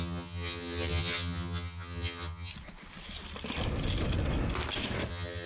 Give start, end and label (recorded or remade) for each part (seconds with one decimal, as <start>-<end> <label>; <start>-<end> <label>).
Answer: 0.0-2.5 remade; 2.5-5.1 recorded; 5.1-5.5 remade